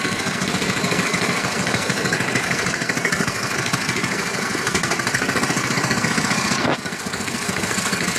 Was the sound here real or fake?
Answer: fake